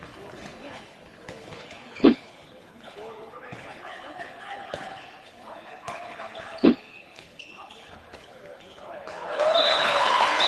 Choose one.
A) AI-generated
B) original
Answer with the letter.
A